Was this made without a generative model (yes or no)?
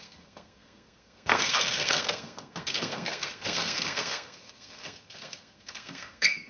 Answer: no